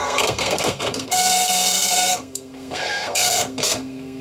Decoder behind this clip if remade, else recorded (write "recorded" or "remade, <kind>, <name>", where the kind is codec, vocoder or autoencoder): remade, codec, SNAC